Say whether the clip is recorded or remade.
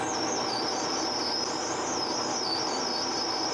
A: recorded